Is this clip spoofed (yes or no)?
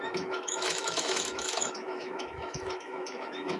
yes